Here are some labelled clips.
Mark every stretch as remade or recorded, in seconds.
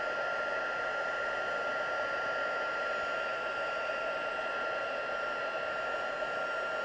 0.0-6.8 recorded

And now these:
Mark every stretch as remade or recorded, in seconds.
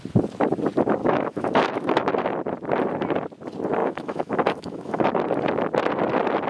0.0-1.0 recorded; 1.0-2.1 remade; 2.1-3.8 recorded; 3.8-5.2 remade; 5.2-6.5 recorded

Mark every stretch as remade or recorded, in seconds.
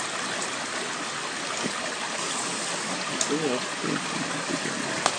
0.0-5.2 recorded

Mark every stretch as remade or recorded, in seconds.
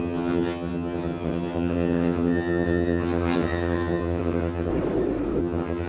0.0-4.7 remade; 4.7-5.4 recorded; 5.4-5.9 remade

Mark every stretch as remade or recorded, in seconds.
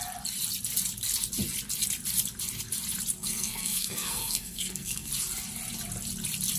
0.0-3.2 recorded; 3.2-5.1 remade; 5.1-6.6 recorded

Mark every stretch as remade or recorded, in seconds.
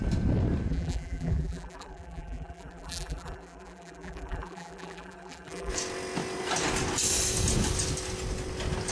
0.0-0.7 recorded; 0.7-5.7 remade; 5.7-8.9 recorded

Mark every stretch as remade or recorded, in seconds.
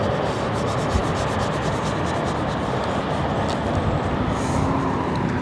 0.0-5.4 recorded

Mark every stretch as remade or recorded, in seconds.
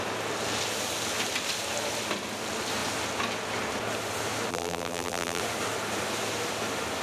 0.0-4.5 recorded; 4.5-5.4 remade; 5.4-7.0 recorded